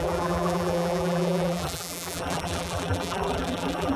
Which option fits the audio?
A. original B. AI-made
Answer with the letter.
B